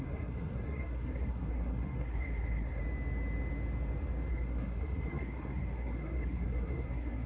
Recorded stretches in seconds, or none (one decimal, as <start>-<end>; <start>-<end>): 2.8-4.3